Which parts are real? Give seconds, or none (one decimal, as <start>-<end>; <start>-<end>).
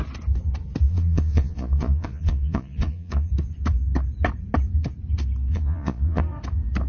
0.0-0.9; 3.3-5.5; 6.2-6.9